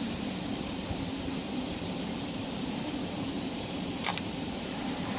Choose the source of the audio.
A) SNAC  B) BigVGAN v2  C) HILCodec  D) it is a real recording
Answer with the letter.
B